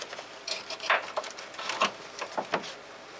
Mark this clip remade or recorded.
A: recorded